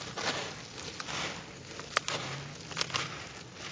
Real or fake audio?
real